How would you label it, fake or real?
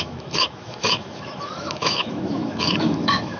fake